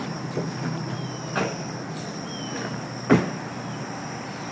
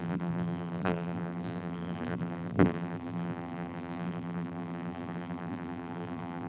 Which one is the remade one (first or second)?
second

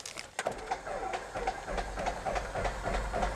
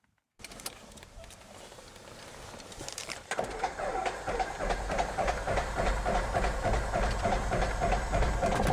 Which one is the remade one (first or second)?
second